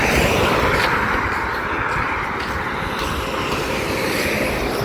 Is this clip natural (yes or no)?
yes